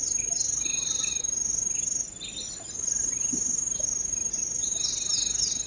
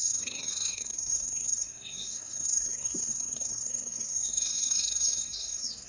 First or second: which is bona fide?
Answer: first